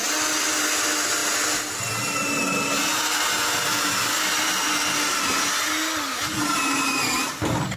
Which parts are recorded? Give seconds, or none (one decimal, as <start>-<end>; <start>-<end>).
0.0-7.8